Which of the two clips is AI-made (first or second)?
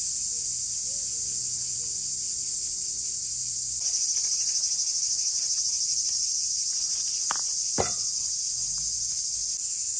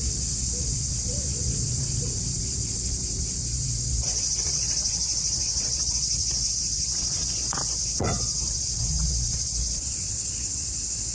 second